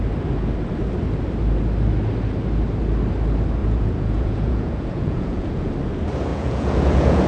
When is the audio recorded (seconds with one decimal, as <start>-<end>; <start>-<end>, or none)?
0.0-3.6; 5.7-6.3